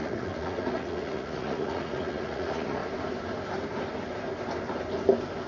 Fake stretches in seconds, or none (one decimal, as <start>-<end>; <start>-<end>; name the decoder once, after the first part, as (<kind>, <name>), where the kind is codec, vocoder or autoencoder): 0.0-2.8 (vocoder, Vocos)